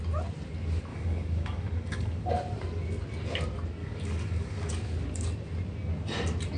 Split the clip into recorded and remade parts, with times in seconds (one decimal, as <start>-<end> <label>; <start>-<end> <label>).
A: 0.0-0.9 recorded; 0.9-2.3 remade; 2.3-3.8 recorded; 3.8-4.7 remade; 4.7-6.6 recorded